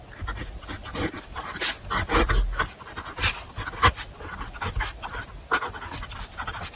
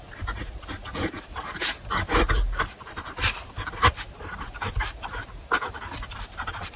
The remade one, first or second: second